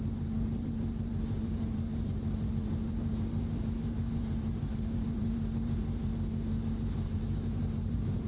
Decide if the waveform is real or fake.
fake